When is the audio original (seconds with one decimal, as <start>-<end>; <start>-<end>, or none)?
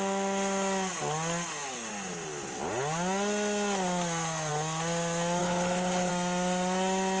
0.0-5.4; 6.1-7.2